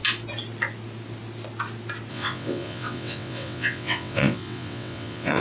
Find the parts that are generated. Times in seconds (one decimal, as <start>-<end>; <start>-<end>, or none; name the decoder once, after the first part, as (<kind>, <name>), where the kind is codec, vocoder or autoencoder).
2.1-5.4 (vocoder, WaveNeXt)

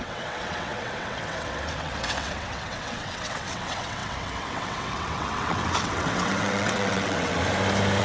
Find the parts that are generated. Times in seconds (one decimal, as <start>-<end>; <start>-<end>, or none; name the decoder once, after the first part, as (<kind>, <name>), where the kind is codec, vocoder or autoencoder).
0.0-7.4 (vocoder, WaveNeXt)